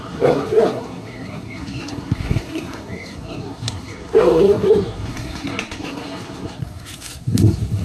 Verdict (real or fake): fake